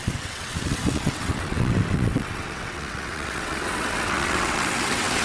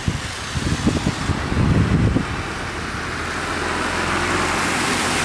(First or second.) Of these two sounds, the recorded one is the second